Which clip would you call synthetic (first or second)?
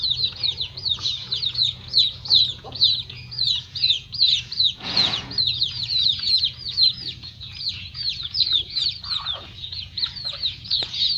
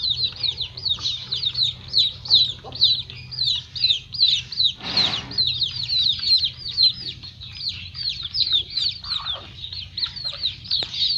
first